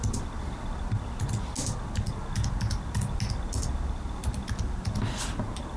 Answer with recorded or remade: recorded